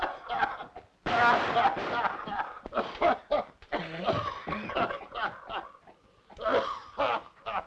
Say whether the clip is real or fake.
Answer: real